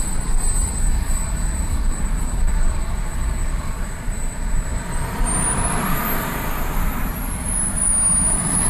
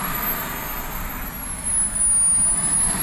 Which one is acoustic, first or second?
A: second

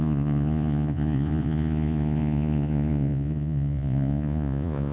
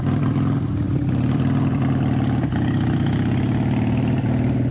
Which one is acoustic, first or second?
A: second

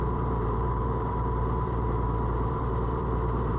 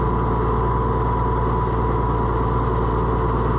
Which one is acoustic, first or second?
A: second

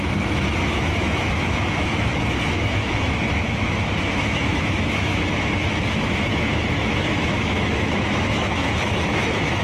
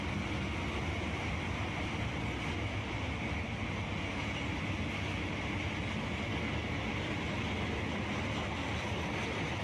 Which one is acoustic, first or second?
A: second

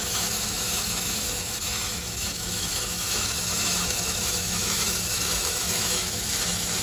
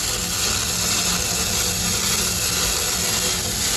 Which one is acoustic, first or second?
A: second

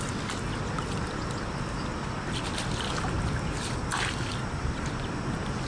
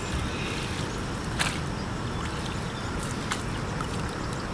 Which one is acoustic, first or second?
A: first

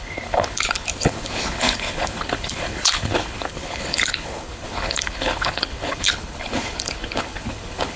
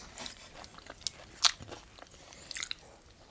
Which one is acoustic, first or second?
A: second